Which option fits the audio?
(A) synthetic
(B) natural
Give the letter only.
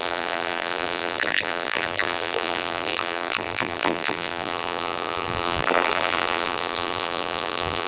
A